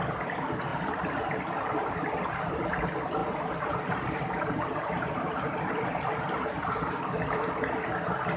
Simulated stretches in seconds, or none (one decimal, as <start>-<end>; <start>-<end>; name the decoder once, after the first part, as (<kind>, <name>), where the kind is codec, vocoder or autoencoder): 0.7-1.9 (vocoder, BigVGAN v2); 3.2-5.4